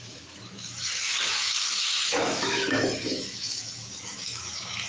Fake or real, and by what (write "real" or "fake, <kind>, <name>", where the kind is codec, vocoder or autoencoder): fake, autoencoder, DAC-VAE